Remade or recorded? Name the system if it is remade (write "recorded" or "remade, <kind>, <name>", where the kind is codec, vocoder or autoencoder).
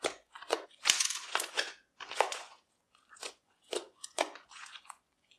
remade, vocoder, Vocos